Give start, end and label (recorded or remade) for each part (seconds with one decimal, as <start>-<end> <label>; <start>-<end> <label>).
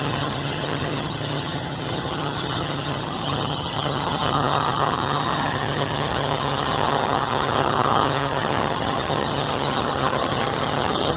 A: 0.0-11.2 remade